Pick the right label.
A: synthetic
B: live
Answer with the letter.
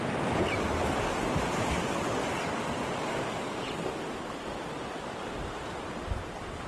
B